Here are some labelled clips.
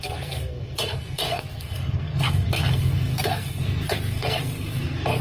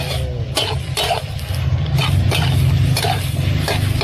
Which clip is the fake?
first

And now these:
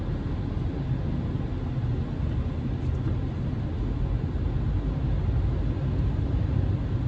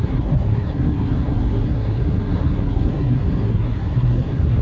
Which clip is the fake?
second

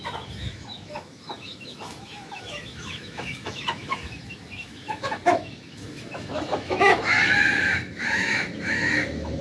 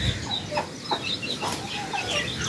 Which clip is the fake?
first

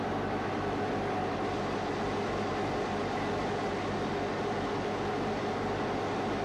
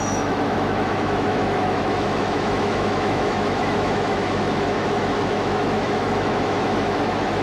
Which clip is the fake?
second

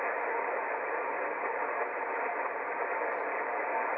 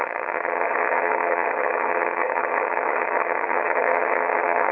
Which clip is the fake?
second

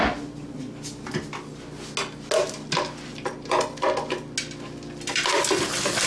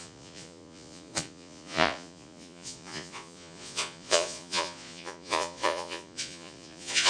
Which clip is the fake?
second